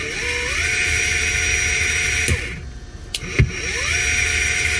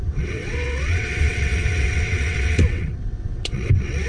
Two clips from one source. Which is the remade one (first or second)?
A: second